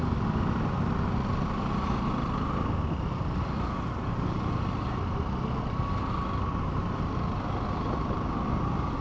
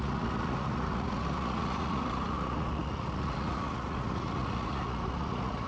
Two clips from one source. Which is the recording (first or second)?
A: first